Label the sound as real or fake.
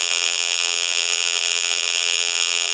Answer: fake